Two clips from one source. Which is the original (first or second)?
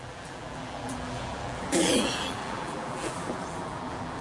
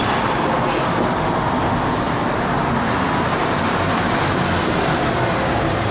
second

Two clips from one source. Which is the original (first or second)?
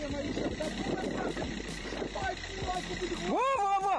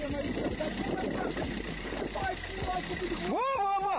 first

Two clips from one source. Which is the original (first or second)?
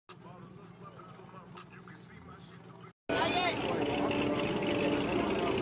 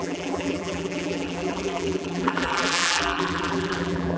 first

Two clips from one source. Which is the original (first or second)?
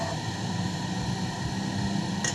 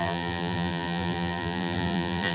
first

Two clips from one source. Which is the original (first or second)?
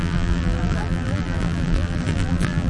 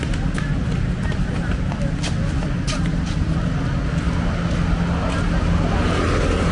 second